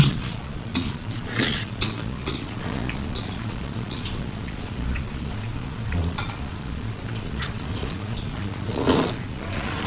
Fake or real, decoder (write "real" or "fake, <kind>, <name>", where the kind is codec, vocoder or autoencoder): fake, vocoder, Vocos